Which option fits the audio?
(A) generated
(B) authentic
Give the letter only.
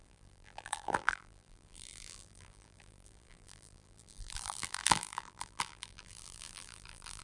A